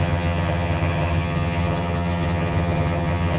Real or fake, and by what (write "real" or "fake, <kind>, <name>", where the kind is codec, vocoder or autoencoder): fake, vocoder, HiFi-GAN